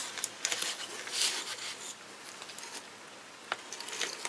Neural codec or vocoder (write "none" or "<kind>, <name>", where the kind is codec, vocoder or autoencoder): none